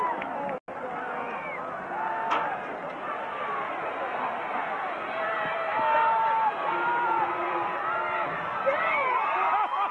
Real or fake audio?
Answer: real